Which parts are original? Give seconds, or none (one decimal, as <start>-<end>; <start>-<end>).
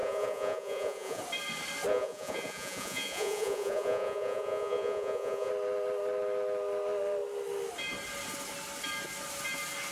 1.2-1.9; 5.5-9.9